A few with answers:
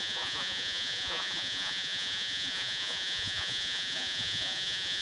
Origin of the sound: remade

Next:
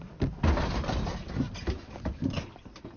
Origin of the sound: recorded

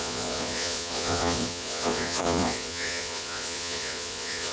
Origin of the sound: remade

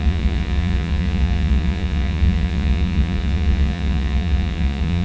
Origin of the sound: remade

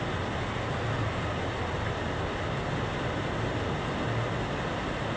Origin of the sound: recorded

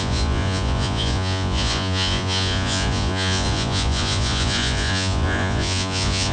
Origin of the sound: remade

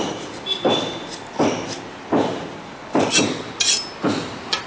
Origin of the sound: recorded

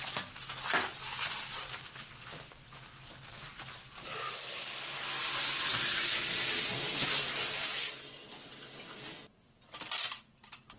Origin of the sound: recorded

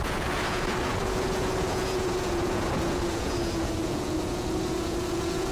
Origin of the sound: remade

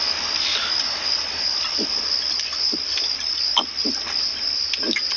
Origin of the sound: recorded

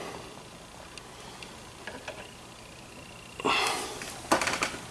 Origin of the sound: recorded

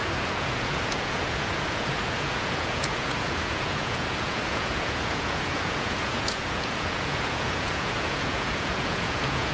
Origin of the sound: remade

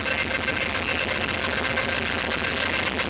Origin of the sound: recorded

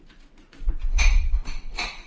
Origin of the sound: remade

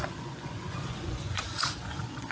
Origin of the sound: remade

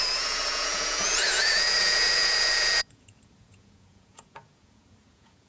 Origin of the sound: remade